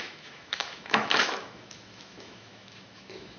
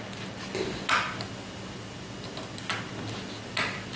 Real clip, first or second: second